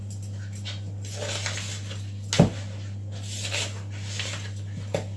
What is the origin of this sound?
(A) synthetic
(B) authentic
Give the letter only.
B